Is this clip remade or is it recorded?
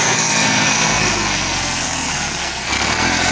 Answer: remade